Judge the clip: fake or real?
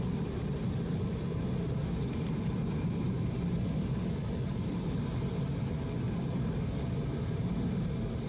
real